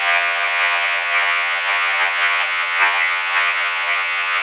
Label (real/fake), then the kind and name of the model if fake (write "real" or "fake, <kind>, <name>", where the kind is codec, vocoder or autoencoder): fake, vocoder, HiFi-GAN